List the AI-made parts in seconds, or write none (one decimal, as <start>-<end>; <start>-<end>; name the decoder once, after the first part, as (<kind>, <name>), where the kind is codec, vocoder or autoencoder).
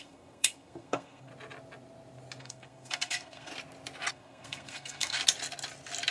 0.0-1.3 (codec, SNAC); 2.4-3.5; 4.1-5.2